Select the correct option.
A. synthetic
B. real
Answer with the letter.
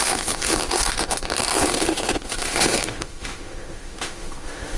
A